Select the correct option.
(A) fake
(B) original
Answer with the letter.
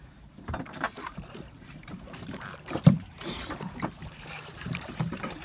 A